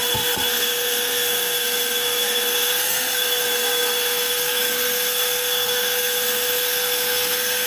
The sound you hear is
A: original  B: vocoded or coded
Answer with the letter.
B